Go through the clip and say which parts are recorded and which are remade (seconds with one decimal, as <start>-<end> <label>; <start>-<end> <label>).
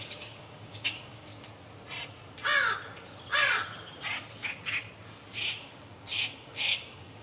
0.0-1.3 remade; 1.3-5.6 recorded; 5.6-7.2 remade